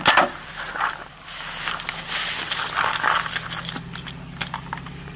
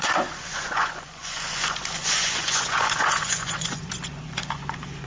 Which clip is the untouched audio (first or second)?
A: first